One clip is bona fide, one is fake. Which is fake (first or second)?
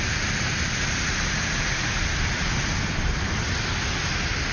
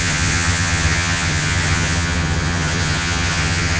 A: second